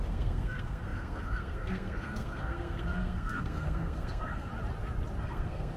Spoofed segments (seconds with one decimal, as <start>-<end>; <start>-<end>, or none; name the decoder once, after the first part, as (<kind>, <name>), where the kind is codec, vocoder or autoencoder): 0.0-4.5 (codec, SNAC); 5.2-5.8